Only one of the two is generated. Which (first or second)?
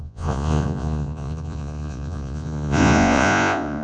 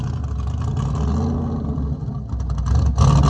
first